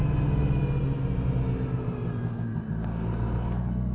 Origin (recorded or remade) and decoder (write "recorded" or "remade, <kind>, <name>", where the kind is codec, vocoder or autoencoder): recorded